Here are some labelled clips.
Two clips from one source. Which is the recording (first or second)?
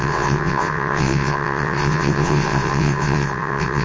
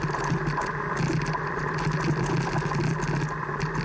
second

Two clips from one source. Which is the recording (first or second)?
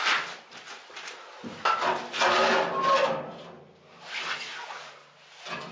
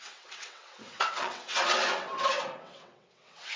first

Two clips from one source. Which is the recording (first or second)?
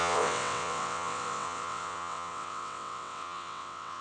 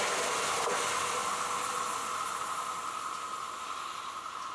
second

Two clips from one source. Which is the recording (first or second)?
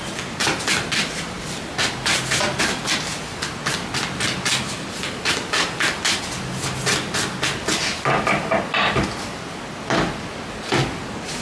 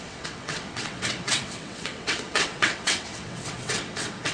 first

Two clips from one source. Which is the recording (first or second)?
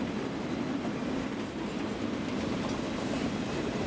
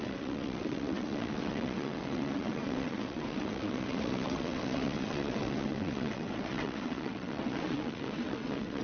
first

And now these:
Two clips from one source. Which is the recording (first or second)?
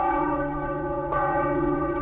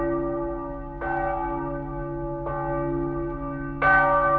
second